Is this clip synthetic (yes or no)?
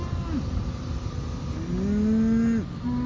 no